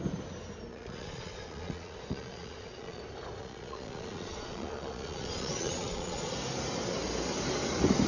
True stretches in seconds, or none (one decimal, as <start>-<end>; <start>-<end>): 0.0-0.7; 3.0-3.4; 6.3-8.1